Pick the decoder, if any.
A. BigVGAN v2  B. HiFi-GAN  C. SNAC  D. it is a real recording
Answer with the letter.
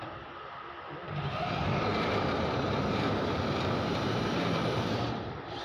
A